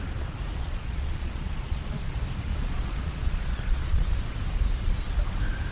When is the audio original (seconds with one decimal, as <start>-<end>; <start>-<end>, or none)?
0.0-0.5; 2.1-2.5; 4.1-5.7